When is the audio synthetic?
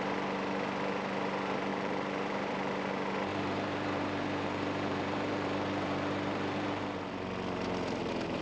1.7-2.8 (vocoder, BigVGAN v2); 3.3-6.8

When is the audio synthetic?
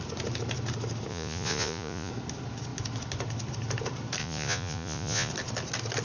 1.1-2.1 (vocoder, Vocos); 4.2-5.3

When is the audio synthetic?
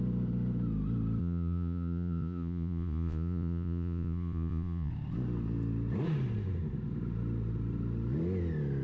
1.2-4.9 (vocoder, Vocos)